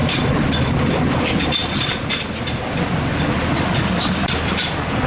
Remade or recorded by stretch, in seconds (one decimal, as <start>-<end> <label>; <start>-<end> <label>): 0.0-1.2 remade; 1.2-5.1 recorded